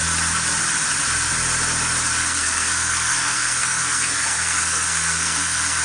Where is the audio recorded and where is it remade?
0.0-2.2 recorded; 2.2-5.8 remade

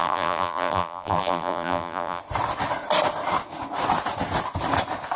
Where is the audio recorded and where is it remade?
0.0-2.2 remade; 2.2-5.2 recorded

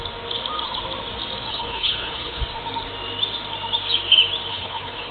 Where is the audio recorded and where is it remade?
0.0-1.5 recorded; 1.5-2.4 remade; 2.4-4.5 recorded; 4.5-5.1 remade